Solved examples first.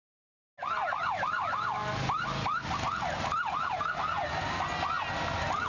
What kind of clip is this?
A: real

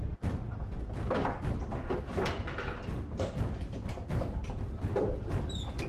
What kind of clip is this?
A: real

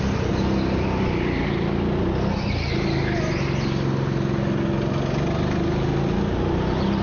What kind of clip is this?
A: real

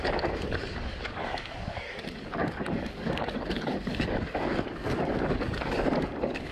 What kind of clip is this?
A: fake